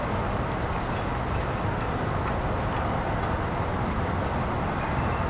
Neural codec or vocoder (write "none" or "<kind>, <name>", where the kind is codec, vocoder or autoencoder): none